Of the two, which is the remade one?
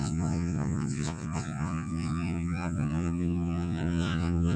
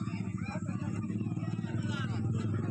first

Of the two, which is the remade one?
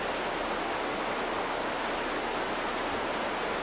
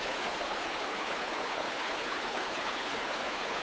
second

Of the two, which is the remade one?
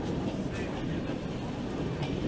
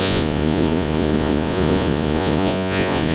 second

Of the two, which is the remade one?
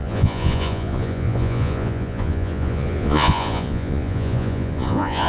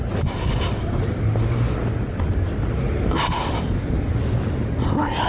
first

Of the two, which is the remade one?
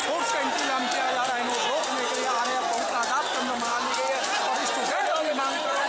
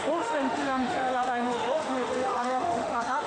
second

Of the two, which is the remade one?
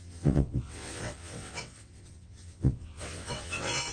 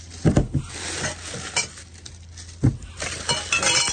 first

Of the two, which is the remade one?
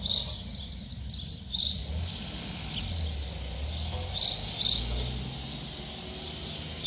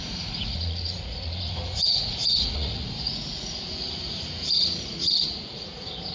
second